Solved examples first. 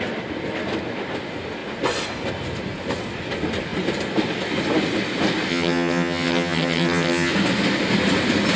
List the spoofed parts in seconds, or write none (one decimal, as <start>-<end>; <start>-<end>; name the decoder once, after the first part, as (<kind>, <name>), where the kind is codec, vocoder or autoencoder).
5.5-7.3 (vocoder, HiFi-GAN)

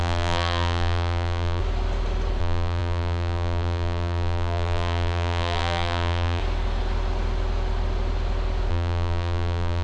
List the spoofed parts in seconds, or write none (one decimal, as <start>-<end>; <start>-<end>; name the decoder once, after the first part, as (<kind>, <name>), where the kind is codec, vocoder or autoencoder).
0.0-1.6 (vocoder, BigVGAN v2); 2.4-6.4; 8.7-9.8

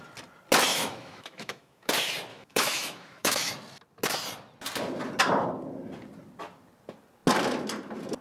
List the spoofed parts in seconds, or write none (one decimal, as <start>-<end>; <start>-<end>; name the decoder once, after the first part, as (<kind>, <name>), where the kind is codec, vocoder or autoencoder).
0.7-1.9 (autoencoder, DAC-VAE); 2.3-3.5

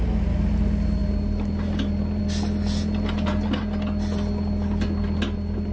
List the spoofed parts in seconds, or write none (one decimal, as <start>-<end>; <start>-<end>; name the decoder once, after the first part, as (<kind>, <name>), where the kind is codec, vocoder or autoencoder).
none

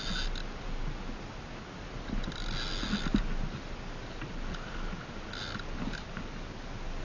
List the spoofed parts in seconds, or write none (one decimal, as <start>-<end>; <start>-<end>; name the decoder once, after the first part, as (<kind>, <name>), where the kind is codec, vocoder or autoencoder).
none

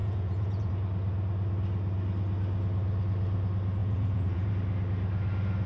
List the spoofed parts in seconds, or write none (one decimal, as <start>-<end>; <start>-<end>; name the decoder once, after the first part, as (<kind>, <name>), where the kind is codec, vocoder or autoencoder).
0.0-0.7 (vocoder, Vocos); 3.8-4.5

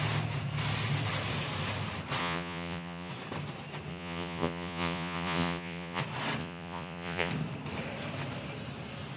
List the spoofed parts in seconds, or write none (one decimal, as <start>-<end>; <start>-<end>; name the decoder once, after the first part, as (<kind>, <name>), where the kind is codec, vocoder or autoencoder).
2.2-3.1 (vocoder, Vocos); 3.9-6.0; 6.4-7.3

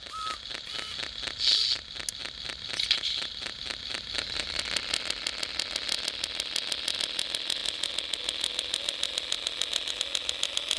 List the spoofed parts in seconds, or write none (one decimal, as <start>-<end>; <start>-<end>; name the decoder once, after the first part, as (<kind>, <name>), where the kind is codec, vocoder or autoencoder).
2.2-4.6 (vocoder, BigVGAN v2)